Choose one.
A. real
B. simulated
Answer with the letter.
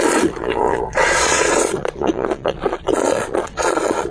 B